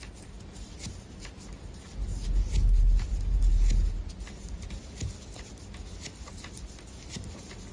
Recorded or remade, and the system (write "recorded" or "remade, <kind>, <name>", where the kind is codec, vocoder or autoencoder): recorded